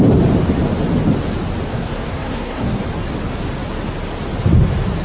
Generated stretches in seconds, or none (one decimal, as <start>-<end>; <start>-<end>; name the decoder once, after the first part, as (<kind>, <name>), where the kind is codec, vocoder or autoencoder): 1.7-2.8 (codec, SNAC)